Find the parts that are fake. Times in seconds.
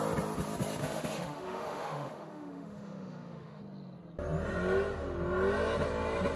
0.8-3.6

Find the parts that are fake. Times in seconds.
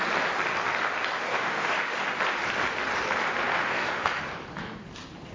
1.3-2.0; 3.5-4.2